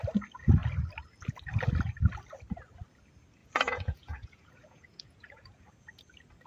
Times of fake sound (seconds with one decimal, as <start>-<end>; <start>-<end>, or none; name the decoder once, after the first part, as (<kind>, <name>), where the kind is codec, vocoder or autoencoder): 3.4-5.7 (vocoder, Vocos)